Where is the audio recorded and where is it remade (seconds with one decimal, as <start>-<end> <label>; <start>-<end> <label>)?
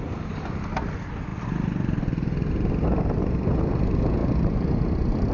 0.0-5.3 recorded